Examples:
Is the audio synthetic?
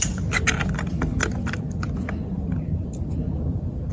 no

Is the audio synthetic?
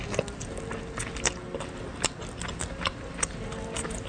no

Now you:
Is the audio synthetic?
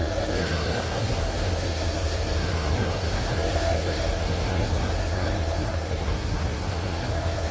yes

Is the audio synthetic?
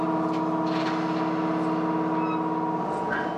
no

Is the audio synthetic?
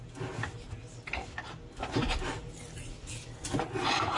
no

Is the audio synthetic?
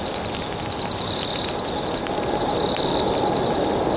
no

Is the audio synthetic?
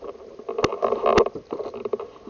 no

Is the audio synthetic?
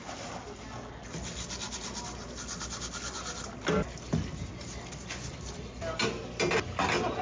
no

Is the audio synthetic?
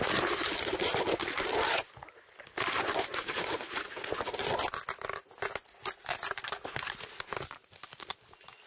no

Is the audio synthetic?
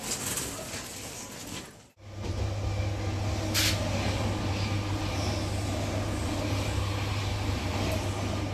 no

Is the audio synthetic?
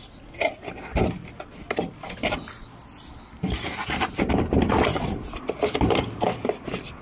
no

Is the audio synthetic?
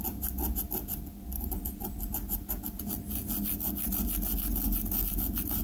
no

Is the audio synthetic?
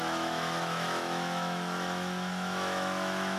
yes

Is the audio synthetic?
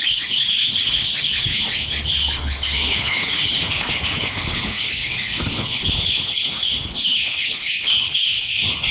yes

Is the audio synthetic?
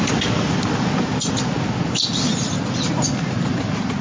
no